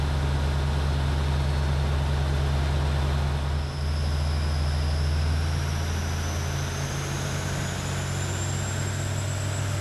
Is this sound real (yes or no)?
yes